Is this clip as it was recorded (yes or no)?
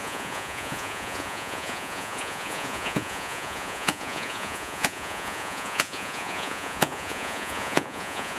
no